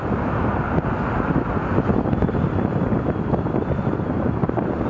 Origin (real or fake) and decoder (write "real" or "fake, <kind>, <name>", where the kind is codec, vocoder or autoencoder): real